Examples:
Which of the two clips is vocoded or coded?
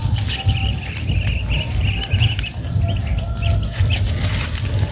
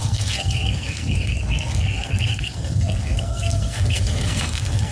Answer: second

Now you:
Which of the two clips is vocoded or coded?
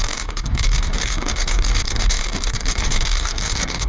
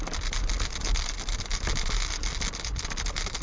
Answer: first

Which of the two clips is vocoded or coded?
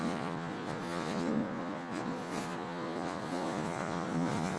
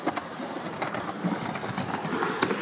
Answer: first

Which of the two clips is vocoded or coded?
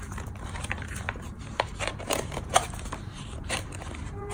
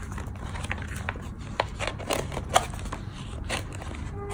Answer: first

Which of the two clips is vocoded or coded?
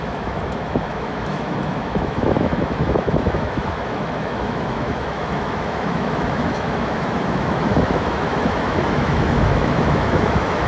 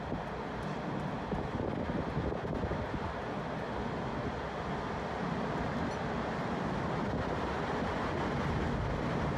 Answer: first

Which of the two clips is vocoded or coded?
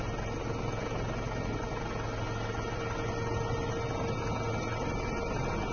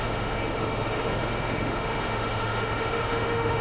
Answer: second